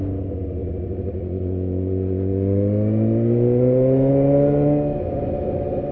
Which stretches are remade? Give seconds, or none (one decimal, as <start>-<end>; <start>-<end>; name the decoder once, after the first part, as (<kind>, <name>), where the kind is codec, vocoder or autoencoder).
none